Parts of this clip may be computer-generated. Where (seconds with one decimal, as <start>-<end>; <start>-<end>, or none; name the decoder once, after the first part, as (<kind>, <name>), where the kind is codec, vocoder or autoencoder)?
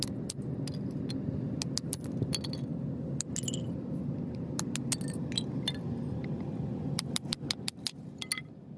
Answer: none